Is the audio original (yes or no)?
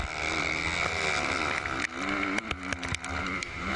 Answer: yes